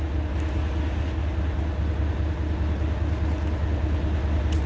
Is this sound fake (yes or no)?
no